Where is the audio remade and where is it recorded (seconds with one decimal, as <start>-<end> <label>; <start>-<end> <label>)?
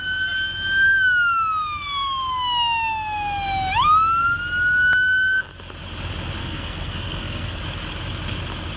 0.0-6.4 recorded; 6.4-7.6 remade; 7.6-8.8 recorded